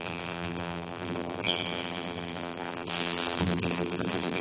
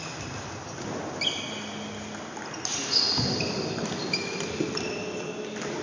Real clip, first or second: second